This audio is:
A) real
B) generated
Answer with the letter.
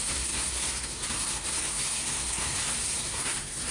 B